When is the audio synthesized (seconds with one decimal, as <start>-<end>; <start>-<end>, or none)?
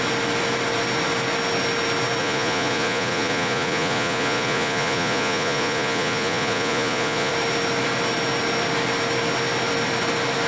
2.2-7.3